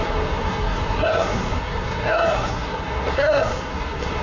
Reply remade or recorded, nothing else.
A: remade